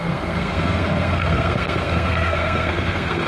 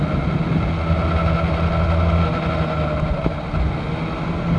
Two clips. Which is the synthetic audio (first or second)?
first